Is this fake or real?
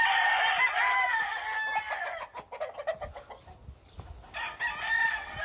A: real